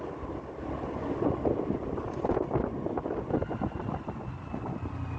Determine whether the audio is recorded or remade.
recorded